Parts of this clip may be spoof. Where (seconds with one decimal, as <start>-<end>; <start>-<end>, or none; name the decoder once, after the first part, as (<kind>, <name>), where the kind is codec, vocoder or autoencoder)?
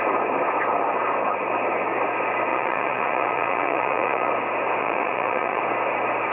2.5-4.3 (vocoder, Vocos); 4.8-5.6